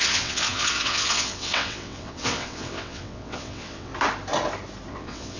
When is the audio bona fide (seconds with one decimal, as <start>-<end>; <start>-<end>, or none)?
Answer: 3.9-4.9